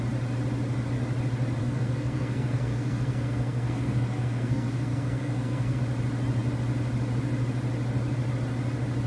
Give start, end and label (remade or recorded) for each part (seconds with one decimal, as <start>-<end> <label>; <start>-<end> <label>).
0.0-1.6 recorded; 1.6-5.8 remade; 5.8-9.1 recorded